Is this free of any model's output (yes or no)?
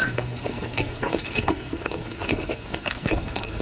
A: no